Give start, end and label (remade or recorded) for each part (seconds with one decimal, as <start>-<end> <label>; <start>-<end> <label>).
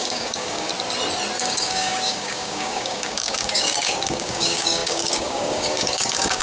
0.0-0.7 remade; 0.7-1.4 recorded; 1.4-6.4 remade